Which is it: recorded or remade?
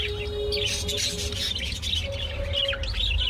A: recorded